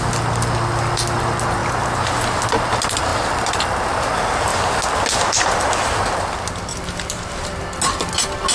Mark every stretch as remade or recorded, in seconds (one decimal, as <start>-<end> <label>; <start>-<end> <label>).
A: 0.0-1.6 recorded; 1.6-2.2 remade; 2.2-6.7 recorded; 6.7-7.6 remade; 7.6-8.5 recorded